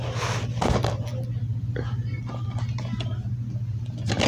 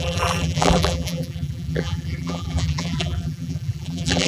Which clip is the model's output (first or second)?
second